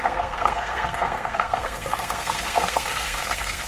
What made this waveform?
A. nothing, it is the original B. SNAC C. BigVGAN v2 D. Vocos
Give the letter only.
B